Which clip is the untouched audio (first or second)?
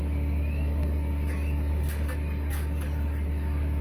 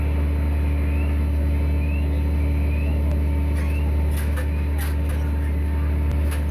second